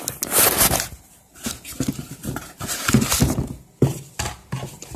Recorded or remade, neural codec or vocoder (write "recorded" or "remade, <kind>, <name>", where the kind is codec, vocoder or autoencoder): recorded